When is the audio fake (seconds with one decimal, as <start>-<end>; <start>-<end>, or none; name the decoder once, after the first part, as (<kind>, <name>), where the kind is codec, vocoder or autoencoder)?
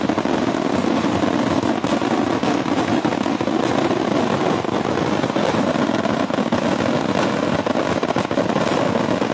none